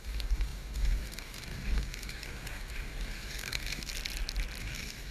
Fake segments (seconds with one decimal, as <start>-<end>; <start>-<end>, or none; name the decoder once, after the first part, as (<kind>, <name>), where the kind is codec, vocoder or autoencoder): 0.0-3.9 (codec, DAC); 4.6-5.1